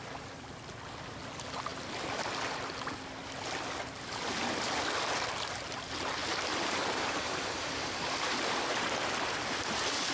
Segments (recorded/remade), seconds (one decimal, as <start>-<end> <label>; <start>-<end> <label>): 0.0-6.2 recorded; 6.2-9.4 remade; 9.4-10.1 recorded